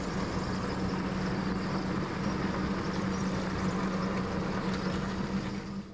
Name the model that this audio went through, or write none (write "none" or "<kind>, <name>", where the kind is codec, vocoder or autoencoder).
none